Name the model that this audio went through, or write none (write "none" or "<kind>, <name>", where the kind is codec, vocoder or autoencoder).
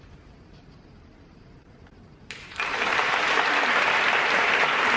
vocoder, BigVGAN v2